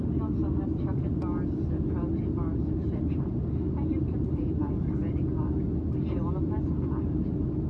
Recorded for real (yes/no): yes